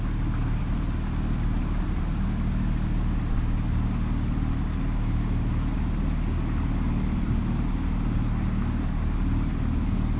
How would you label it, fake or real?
real